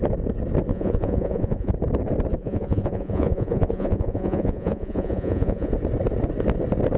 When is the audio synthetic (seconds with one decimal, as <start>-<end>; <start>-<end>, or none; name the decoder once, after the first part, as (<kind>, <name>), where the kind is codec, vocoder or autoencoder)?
0.7-1.7 (vocoder, Vocos); 2.4-5.7

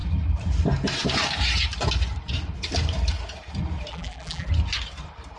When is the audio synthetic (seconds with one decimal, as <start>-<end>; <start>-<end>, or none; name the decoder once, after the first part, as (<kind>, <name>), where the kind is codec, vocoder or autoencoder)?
3.9-4.5 (vocoder, BigVGAN v2)

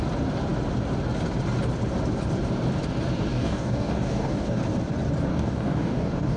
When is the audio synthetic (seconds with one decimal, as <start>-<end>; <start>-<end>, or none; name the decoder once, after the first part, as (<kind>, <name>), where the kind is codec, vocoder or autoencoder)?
3.3-4.6 (codec, DAC); 5.3-6.4

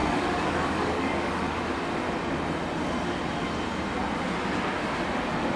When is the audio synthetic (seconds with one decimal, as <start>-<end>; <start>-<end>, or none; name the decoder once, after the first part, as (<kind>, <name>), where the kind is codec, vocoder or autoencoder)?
0.0-1.6 (codec, DAC)

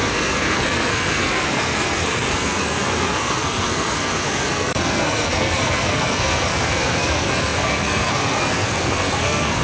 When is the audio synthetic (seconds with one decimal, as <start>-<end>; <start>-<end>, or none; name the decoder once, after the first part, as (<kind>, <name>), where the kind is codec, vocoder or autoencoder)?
0.0-9.6 (codec, SNAC)

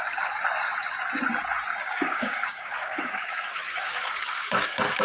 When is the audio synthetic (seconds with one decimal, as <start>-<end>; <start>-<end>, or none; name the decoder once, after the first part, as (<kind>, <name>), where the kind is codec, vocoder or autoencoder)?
1.8-5.0 (codec, DAC)

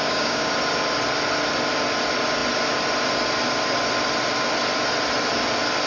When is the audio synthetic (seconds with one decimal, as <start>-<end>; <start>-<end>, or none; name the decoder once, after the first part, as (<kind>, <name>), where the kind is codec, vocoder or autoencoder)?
0.0-0.5 (codec, DAC)